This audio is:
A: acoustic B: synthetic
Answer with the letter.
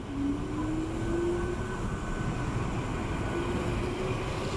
A